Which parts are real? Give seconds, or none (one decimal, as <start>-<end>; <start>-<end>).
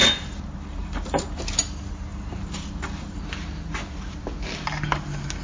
1.4-2.1; 3.2-5.4